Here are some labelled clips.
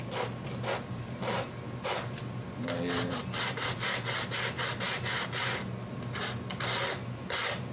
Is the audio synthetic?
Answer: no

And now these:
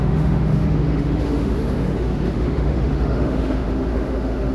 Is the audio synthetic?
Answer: yes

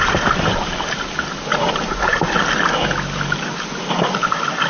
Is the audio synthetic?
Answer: no